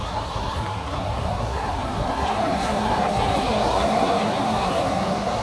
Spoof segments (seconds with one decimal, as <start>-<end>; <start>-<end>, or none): 0.0-5.4